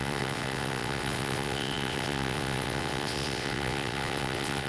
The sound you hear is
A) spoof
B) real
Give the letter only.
A